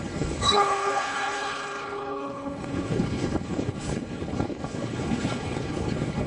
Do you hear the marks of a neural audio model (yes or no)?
yes